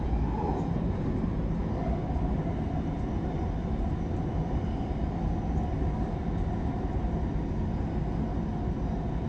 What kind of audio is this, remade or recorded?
recorded